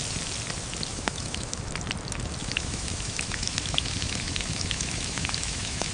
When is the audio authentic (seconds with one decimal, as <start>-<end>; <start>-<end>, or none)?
0.0-0.9; 1.7-2.4